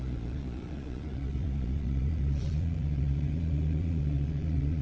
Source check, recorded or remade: remade